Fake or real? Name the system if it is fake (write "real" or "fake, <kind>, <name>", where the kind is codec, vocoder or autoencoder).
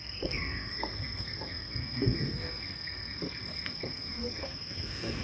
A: fake, codec, SNAC